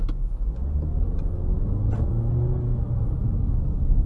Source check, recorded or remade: recorded